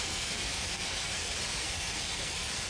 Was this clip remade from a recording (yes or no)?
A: yes